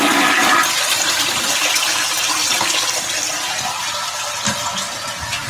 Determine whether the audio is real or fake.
real